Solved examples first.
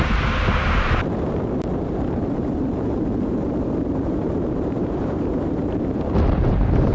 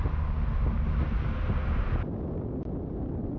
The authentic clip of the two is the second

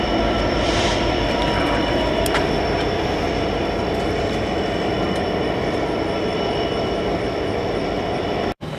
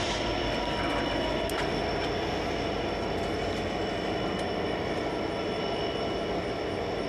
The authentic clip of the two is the second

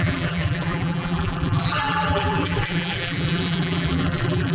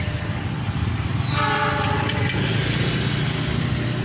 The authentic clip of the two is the second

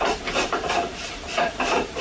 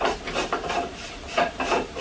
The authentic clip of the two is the second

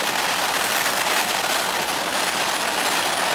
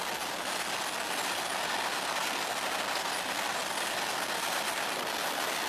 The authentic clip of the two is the second